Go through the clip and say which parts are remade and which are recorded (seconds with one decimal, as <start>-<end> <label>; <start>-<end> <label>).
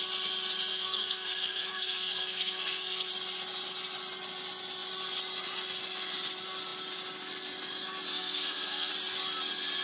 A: 0.0-0.7 recorded; 0.7-3.1 remade; 3.1-8.1 recorded; 8.1-8.9 remade; 8.9-9.8 recorded